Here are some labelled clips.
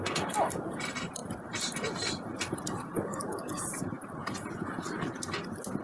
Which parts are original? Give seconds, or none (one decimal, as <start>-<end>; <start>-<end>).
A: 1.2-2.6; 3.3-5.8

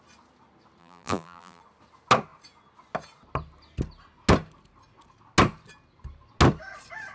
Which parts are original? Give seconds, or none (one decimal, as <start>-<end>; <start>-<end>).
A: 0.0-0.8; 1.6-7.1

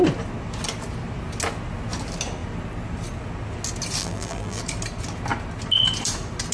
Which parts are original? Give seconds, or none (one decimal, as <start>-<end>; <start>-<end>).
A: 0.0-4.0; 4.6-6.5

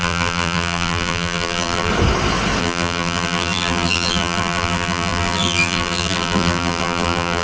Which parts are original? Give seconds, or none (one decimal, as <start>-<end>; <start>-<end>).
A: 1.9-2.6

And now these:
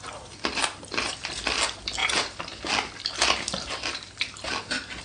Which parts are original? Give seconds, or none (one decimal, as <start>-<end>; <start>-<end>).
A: 0.0-0.6; 1.1-5.0